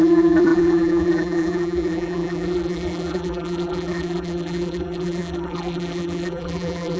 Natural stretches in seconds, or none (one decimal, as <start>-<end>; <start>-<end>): none